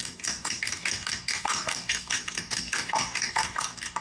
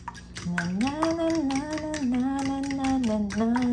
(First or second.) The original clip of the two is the second